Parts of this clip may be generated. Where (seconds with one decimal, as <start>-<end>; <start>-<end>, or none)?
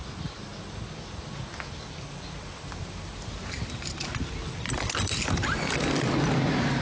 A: none